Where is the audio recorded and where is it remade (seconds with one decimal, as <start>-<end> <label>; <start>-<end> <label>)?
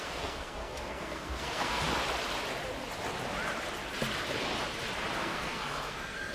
0.0-1.8 remade; 1.8-5.2 recorded; 5.2-6.3 remade